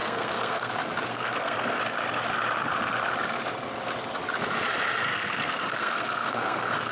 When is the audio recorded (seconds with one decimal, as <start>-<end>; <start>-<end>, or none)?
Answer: 0.7-1.1; 1.8-5.1